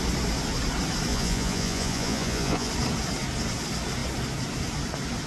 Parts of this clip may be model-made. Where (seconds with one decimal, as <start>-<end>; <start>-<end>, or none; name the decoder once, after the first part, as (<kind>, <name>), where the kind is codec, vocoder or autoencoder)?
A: 1.1-2.7 (vocoder, Vocos)